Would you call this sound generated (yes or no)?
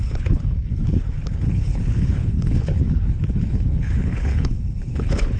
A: yes